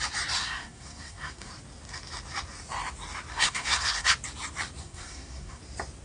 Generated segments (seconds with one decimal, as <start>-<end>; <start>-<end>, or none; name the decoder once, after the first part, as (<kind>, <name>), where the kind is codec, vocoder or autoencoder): 0.4-1.5 (codec, SNAC); 3.3-4.1; 4.8-5.6